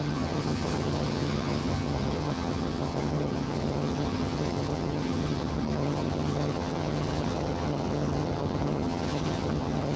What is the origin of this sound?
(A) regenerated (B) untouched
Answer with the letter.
A